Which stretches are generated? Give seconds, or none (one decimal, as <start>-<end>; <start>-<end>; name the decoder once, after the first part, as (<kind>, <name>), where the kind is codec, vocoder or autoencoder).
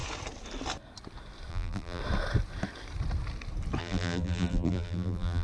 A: 1.5-2.0 (vocoder, BigVGAN v2); 3.8-5.4